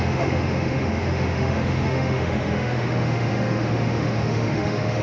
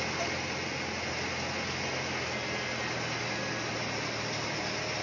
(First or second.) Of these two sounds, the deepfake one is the first